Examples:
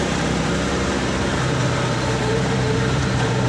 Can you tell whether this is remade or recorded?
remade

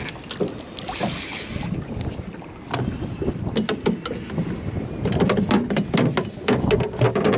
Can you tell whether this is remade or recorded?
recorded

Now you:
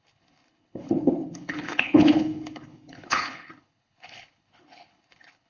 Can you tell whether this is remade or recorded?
remade